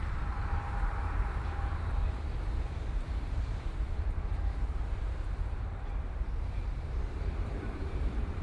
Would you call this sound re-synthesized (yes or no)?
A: yes